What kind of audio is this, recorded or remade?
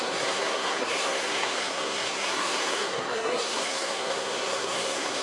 remade